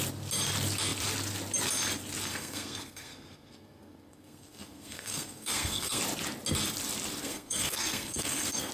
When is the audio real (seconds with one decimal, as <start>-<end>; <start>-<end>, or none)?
0.0-2.3; 6.0-7.2

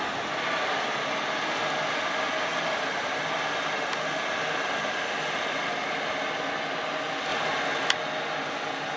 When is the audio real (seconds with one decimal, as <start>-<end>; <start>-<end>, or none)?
0.0-2.5; 3.2-9.0

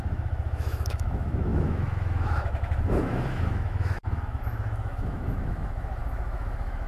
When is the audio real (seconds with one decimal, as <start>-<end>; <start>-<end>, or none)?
none

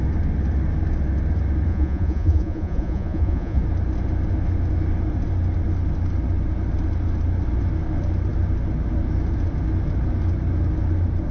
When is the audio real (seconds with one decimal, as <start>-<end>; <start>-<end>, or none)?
0.0-1.7; 3.6-11.3

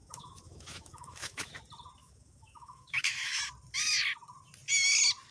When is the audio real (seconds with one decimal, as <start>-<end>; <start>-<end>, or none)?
1.5-2.0; 3.4-5.3

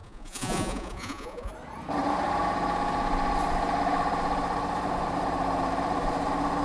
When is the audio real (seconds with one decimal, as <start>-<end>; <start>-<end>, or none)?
1.5-6.6

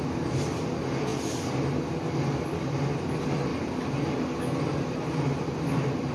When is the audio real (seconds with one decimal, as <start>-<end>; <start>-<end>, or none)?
0.0-6.1